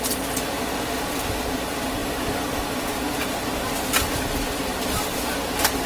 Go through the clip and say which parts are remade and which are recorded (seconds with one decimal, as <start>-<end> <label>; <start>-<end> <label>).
0.0-5.9 recorded